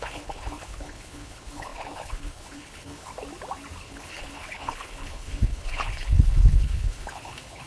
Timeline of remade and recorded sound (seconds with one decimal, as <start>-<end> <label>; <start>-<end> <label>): 0.0-3.1 remade; 3.1-3.8 recorded; 3.8-7.7 remade